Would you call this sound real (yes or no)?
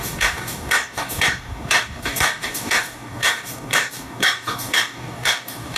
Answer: no